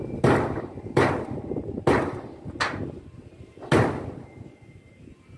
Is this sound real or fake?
real